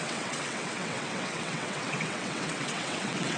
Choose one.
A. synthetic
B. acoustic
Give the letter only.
A